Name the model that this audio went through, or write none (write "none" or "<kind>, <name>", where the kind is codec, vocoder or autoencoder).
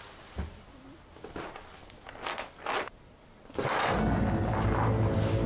none